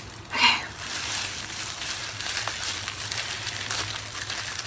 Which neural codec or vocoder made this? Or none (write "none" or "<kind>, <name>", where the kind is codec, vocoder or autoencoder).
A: none